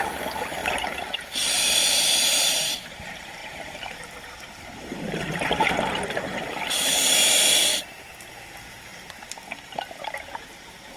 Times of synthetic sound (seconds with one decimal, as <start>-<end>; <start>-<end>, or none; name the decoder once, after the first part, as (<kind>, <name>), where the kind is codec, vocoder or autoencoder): 0.0-0.6 (vocoder, BigVGAN v2); 1.6-7.7; 8.3-8.9; 10.0-11.0